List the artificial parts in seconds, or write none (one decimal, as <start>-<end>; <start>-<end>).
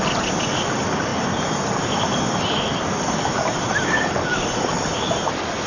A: none